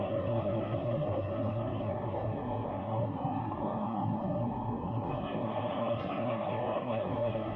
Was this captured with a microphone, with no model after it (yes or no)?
no